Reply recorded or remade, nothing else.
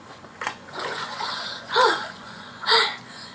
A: remade